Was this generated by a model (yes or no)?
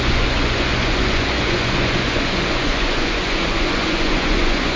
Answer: yes